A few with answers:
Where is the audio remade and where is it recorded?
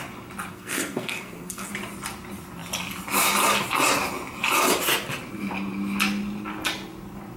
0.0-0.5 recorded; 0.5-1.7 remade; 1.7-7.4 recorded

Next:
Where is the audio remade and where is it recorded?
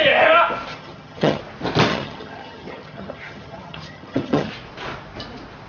0.0-0.7 recorded; 0.7-1.4 remade; 1.4-1.9 recorded; 1.9-4.5 remade; 4.5-5.7 recorded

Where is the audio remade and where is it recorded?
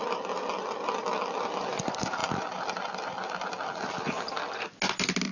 0.0-5.3 recorded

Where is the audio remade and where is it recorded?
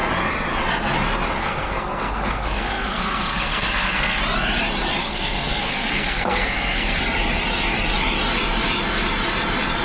0.0-1.4 recorded; 1.4-4.2 remade; 4.2-5.0 recorded; 5.0-7.0 remade; 7.0-9.8 recorded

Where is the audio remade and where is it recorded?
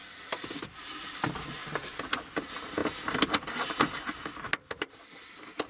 0.0-5.7 recorded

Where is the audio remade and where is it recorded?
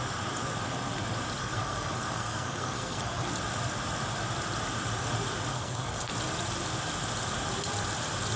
0.0-1.4 recorded; 1.4-3.3 remade; 3.3-5.5 recorded; 5.5-6.1 remade; 6.1-8.4 recorded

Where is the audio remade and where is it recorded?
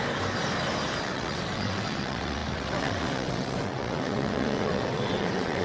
0.0-1.0 recorded; 1.0-5.6 remade